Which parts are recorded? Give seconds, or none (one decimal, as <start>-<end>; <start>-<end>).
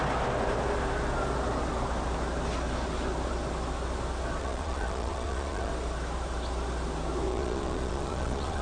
0.0-4.4; 5.7-7.3